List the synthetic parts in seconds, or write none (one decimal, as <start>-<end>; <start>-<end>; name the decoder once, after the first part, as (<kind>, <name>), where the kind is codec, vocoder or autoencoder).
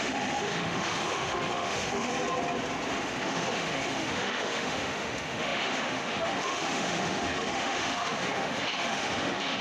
0.0-2.1 (autoencoder, DAC-VAE); 2.9-9.6